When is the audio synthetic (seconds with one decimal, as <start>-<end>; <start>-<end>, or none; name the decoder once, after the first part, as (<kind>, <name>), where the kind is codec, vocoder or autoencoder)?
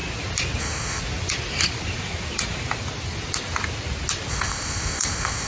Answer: 0.6-1.0 (codec, ZipCodec); 4.3-5.5